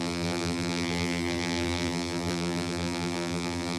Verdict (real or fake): fake